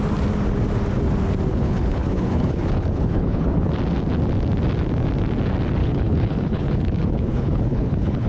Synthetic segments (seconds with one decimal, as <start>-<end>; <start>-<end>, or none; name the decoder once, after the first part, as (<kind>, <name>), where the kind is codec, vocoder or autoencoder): 1.5-3.7 (codec, HILCodec); 5.8-8.3